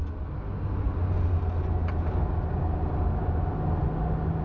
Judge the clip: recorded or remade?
recorded